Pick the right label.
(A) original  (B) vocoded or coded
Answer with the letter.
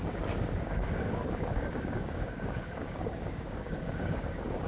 B